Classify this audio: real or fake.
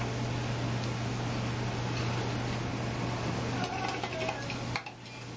real